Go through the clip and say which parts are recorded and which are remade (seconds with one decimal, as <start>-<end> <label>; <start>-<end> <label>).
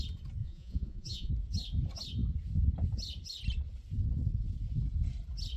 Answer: 0.0-0.4 recorded; 0.4-1.3 remade; 1.3-5.6 recorded